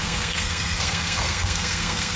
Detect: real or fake fake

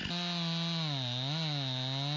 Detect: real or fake real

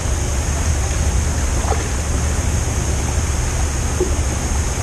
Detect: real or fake real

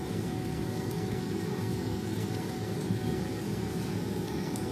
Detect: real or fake fake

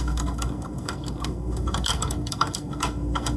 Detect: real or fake fake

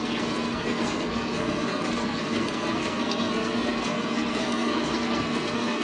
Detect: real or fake fake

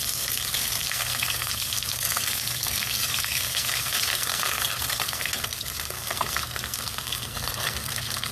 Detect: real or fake fake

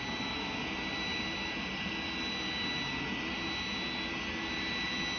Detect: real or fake real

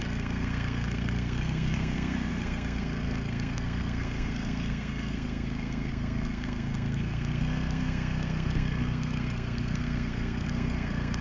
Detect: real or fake fake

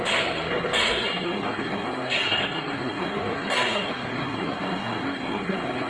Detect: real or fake fake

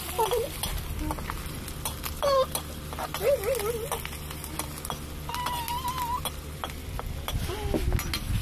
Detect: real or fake real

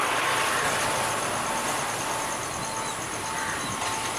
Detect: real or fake real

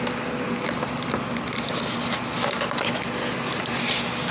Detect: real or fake real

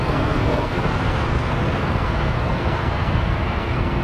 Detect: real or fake fake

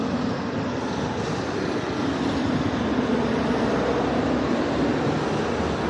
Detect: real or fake real